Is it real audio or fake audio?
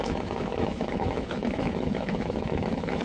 fake